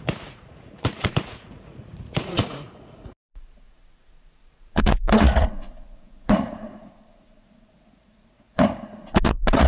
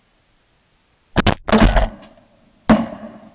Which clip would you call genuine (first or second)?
second